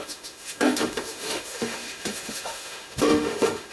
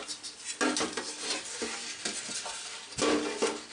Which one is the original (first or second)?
second